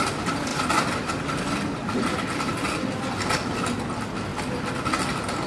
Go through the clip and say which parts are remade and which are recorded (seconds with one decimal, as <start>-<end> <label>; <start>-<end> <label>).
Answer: 0.0-5.5 recorded